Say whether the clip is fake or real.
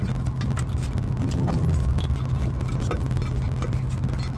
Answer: real